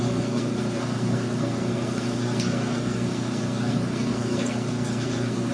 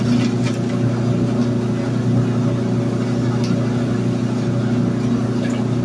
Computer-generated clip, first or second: first